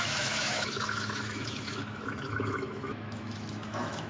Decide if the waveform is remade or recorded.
remade